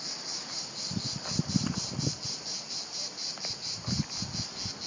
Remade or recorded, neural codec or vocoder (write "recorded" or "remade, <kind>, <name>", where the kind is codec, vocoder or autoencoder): recorded